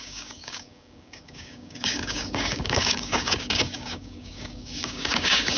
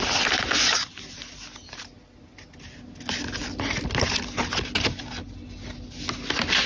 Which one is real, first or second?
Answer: second